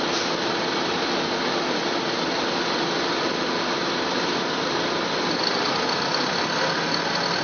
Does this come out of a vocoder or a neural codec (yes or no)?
no